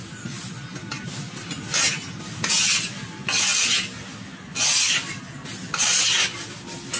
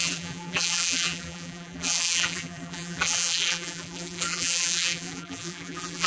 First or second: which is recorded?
first